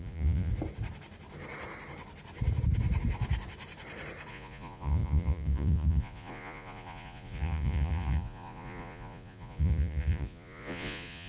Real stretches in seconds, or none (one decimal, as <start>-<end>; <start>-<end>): 0.5-4.3

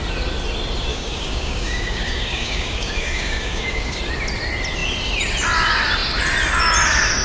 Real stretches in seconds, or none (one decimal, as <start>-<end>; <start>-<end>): 0.0-0.9; 4.0-7.2